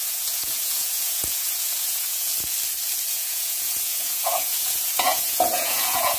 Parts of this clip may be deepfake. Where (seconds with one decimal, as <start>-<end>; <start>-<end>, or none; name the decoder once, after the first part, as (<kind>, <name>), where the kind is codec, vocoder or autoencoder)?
0.0-2.3 (vocoder, Vocos); 3.1-6.2